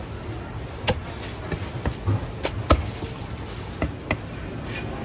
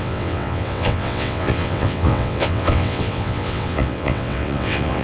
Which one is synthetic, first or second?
second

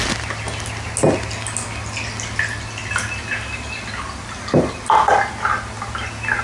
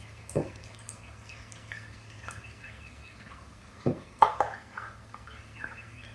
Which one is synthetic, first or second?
second